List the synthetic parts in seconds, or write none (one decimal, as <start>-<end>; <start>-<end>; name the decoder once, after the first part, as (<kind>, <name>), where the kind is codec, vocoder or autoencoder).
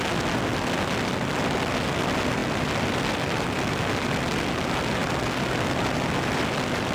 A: none